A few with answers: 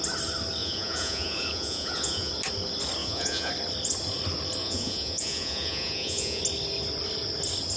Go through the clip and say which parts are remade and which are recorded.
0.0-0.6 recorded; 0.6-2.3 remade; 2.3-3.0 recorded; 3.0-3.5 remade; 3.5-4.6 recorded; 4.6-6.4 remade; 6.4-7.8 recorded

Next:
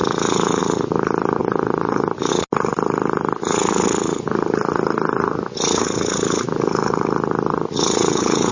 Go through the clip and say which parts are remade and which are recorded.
0.0-1.4 recorded; 1.4-2.3 remade; 2.3-7.5 recorded; 7.5-8.5 remade

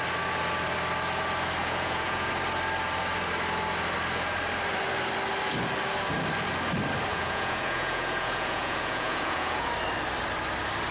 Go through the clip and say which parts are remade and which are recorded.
0.0-1.6 recorded; 1.6-2.3 remade; 2.3-7.1 recorded; 7.1-9.7 remade; 9.7-10.9 recorded